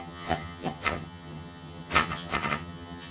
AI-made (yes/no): yes